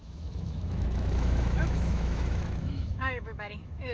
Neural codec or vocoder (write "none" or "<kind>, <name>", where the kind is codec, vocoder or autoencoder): autoencoder, DAC-VAE